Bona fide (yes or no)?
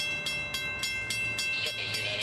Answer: yes